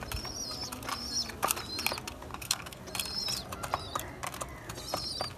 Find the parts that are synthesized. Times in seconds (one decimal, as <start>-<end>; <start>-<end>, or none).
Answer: 2.3-2.8